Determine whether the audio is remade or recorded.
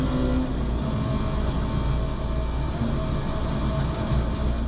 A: recorded